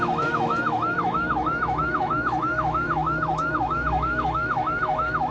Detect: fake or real fake